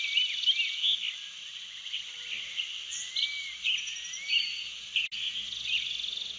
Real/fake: real